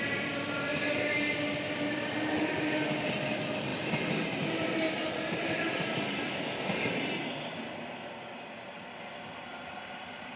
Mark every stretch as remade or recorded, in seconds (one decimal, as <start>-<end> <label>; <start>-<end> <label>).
0.0-10.4 recorded